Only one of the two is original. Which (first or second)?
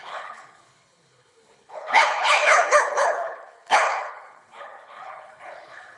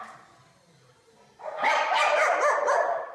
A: second